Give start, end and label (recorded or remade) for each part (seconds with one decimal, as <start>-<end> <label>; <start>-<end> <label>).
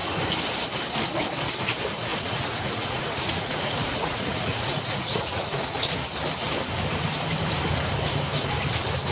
0.0-2.1 recorded; 2.1-5.9 remade; 5.9-9.1 recorded